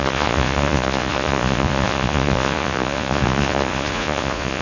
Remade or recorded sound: remade